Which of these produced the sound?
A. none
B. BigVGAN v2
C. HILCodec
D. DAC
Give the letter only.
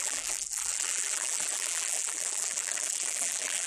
B